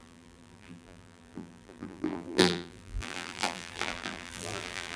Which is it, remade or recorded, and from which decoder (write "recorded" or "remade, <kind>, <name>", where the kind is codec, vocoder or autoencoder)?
remade, vocoder, BigVGAN v2